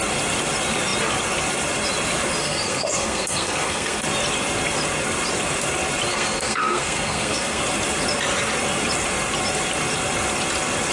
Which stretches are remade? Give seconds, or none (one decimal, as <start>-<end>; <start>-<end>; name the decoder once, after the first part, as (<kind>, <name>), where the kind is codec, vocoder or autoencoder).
2.4-4.0 (codec, SNAC); 6.1-7.6